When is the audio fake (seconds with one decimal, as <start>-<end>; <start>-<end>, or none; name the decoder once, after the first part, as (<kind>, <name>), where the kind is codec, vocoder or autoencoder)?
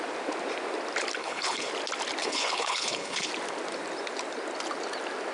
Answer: 1.2-1.7 (codec, HILCodec); 2.2-3.3